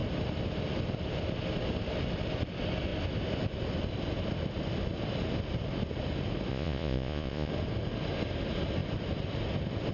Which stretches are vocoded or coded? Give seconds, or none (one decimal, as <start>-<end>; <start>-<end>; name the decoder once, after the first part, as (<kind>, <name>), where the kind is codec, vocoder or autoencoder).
6.5-7.5 (vocoder, Vocos)

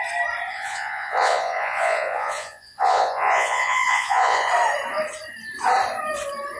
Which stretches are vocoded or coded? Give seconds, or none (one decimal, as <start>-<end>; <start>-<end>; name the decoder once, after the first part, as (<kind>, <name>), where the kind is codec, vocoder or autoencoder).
0.5-4.5 (vocoder, Vocos)

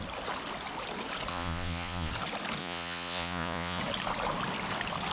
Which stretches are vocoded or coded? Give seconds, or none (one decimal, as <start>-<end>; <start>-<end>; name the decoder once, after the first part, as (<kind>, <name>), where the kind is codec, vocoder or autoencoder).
1.3-2.1 (vocoder, Vocos); 2.6-3.8